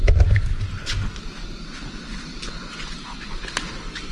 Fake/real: real